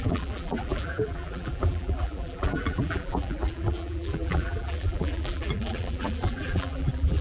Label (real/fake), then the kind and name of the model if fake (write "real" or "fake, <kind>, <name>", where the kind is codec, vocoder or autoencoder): fake, vocoder, BigVGAN v2